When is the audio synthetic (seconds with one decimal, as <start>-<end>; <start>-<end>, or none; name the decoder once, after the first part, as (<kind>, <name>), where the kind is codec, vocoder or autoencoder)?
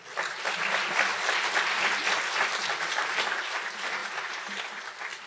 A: 4.0-4.6 (vocoder, BigVGAN v2)